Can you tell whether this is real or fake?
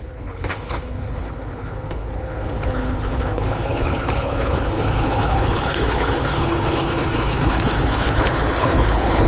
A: fake